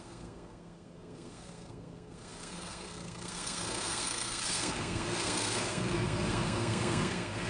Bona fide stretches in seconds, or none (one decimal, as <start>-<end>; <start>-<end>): none